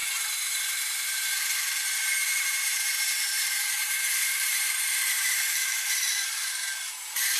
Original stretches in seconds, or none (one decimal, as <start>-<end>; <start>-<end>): 0.0-1.1